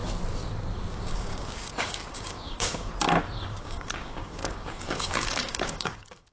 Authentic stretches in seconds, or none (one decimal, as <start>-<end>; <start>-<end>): 0.0-0.9; 2.9-3.6